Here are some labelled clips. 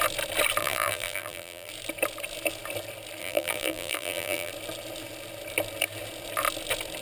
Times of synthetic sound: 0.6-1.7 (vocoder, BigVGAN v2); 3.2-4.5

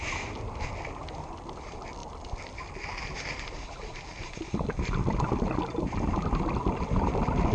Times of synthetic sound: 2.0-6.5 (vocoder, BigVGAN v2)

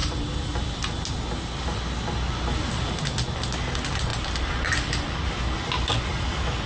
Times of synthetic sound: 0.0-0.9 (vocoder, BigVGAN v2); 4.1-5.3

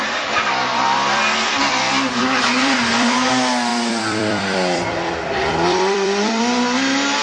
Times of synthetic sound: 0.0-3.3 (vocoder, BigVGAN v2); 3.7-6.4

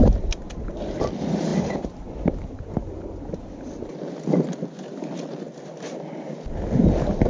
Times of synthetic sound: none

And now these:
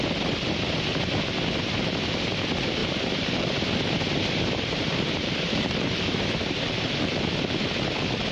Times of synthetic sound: 2.8-6.6 (vocoder, BigVGAN v2)

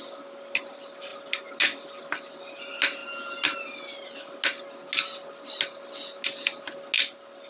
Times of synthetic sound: none

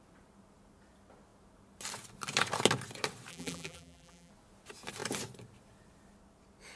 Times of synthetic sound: 3.3-4.3 (vocoder, BigVGAN v2)